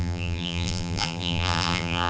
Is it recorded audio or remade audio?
remade